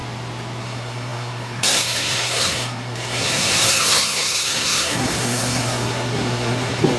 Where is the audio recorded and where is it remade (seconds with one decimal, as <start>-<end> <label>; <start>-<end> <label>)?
0.0-0.6 recorded; 0.6-7.0 remade